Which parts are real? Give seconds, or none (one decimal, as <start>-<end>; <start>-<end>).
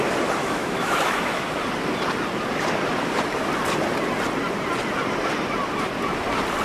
0.0-0.4; 1.4-6.6